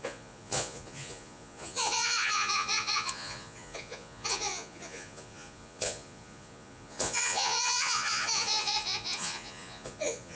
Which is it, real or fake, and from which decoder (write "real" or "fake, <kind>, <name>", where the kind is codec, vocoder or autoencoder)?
fake, vocoder, Vocos